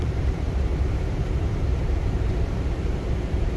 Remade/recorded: remade